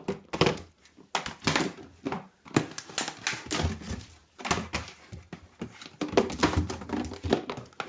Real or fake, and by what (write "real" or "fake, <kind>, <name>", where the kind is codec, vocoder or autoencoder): real